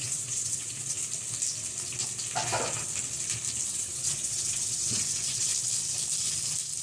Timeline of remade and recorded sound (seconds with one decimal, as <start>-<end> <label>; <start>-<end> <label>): 0.0-1.0 remade; 1.0-3.7 recorded; 3.7-5.5 remade; 5.5-6.8 recorded